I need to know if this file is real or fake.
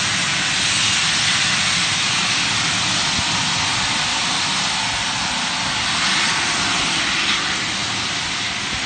real